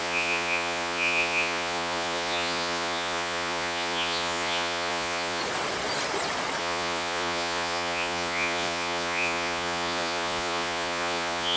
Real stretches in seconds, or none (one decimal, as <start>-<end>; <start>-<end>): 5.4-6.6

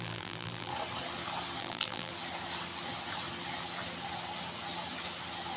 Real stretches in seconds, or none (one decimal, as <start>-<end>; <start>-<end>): 0.7-1.6; 2.1-5.6

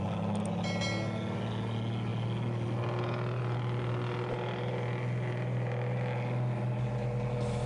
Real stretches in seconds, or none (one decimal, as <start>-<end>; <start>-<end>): 0.0-7.7

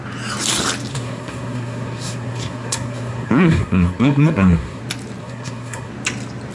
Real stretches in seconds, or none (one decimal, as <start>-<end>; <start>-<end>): 0.0-0.9; 4.8-5.2; 5.9-6.5

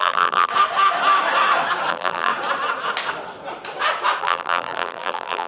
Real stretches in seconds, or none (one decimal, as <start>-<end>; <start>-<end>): 0.5-1.9; 2.3-4.2

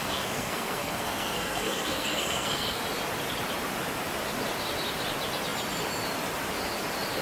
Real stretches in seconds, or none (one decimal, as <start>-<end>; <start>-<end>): 2.8-7.2